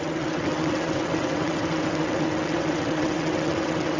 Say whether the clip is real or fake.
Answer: fake